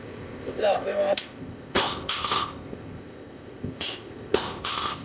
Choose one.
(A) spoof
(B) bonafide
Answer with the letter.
A